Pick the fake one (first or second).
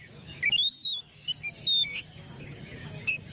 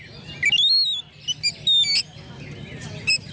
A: first